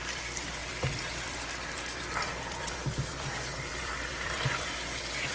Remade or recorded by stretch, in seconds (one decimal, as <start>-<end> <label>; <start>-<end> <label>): 0.0-5.3 remade